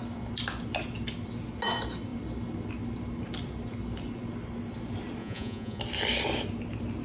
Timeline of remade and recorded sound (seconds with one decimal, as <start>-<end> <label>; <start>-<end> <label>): 0.0-5.2 recorded; 5.2-5.8 remade; 5.8-7.0 recorded